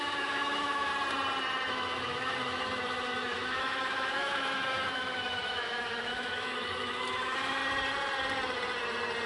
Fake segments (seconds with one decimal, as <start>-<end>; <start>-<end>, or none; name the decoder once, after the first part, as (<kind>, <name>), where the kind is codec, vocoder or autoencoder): 0.0-0.9 (autoencoder, DAC-VAE); 1.7-7.6